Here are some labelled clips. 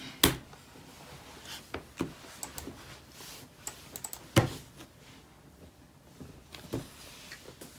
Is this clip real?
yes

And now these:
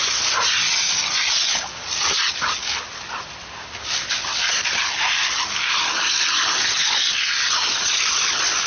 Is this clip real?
yes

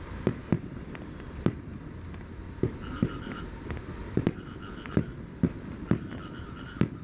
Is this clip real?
yes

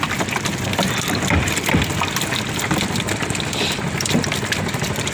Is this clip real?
no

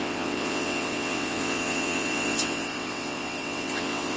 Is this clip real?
no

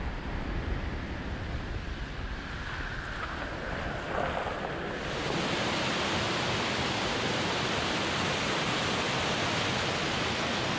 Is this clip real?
yes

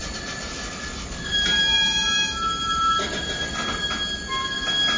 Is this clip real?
yes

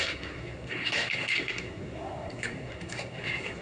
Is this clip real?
no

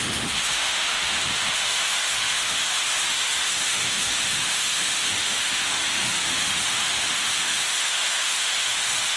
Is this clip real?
no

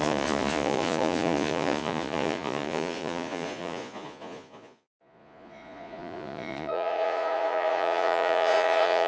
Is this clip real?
no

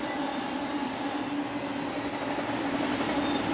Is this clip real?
yes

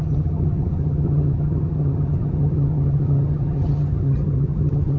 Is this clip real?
no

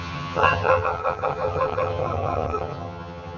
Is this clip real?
no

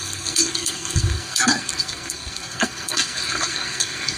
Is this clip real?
no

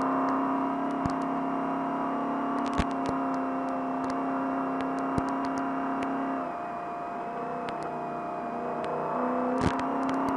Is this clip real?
yes